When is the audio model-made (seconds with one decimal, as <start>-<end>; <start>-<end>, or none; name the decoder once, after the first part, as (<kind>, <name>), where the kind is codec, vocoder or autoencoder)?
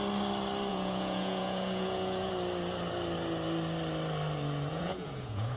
0.7-2.3 (vocoder, Vocos); 4.7-5.6